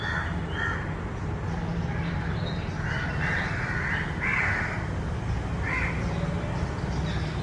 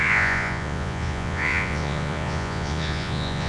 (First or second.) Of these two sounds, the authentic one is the first